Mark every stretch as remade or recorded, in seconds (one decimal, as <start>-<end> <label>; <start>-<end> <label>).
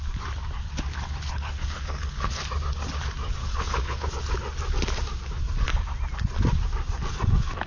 0.0-1.3 recorded; 1.3-2.4 remade; 2.4-3.4 recorded; 3.4-4.1 remade; 4.1-7.7 recorded